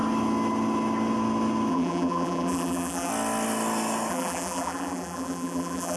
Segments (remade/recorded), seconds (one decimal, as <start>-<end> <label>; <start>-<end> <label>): 0.0-1.7 recorded; 1.7-3.1 remade; 3.1-4.1 recorded; 4.1-6.0 remade